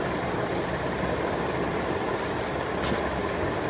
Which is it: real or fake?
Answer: real